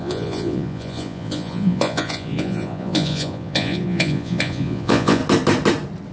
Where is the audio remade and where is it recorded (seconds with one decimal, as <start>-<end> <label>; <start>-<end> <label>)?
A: 0.0-5.2 remade; 5.2-6.1 recorded

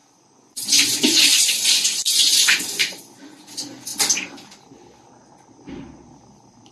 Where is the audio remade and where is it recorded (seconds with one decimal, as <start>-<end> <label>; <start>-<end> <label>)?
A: 0.0-3.9 remade; 3.9-6.7 recorded

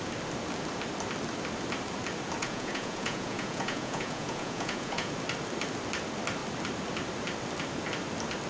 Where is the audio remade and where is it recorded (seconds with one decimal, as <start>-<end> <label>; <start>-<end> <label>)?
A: 0.0-2.4 recorded; 2.4-5.1 remade; 5.1-8.5 recorded

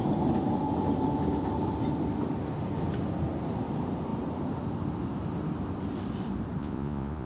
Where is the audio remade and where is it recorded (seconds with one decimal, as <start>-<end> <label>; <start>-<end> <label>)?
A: 0.0-6.6 recorded; 6.6-7.3 remade